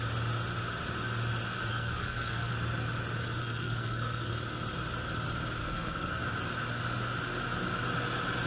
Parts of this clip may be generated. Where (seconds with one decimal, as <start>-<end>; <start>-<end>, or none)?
1.7-2.5; 3.4-4.3; 5.6-6.2